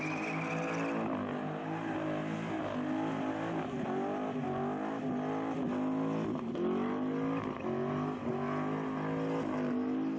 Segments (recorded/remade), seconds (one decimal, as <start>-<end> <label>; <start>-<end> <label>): 0.0-10.2 recorded